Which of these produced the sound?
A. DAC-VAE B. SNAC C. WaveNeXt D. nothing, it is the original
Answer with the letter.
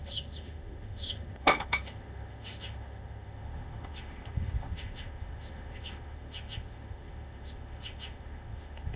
A